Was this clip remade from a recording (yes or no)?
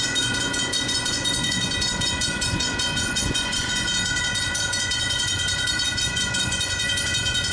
yes